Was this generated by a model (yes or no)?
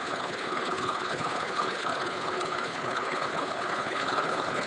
yes